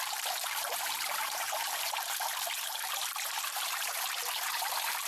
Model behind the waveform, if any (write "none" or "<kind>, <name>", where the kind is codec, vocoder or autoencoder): vocoder, BigVGAN v2